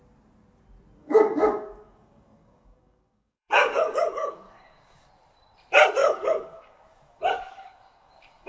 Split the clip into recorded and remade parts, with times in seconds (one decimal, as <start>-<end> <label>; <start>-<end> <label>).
0.0-1.0 recorded; 1.0-5.1 remade; 5.1-6.0 recorded; 6.0-8.5 remade